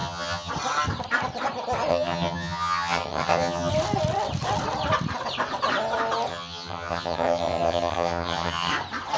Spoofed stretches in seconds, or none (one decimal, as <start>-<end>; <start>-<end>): 0.0-0.5; 1.9-3.7; 6.3-8.7